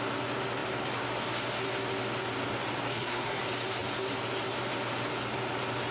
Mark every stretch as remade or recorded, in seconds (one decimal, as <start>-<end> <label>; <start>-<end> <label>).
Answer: 0.0-2.9 recorded; 2.9-3.4 remade; 3.4-5.9 recorded